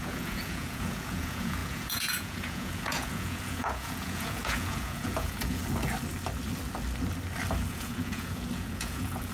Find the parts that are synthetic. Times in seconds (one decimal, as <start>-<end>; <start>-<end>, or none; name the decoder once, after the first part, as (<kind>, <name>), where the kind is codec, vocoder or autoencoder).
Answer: 0.0-5.6 (vocoder, Vocos); 7.7-9.3